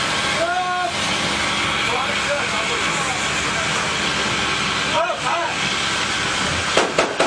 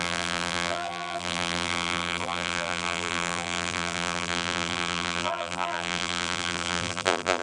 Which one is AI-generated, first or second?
second